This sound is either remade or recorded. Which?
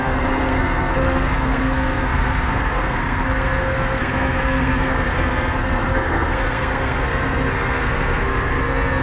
remade